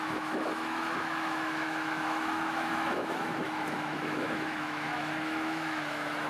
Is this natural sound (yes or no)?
no